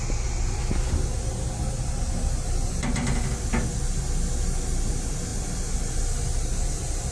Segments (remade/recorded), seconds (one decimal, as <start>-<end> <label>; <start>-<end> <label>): 0.0-7.1 recorded